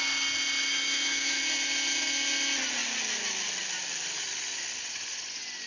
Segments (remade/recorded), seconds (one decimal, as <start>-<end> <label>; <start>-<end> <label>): 0.0-0.7 recorded; 0.7-1.4 remade; 1.4-5.7 recorded